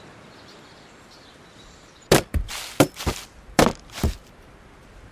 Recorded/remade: recorded